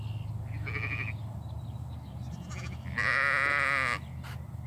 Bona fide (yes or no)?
yes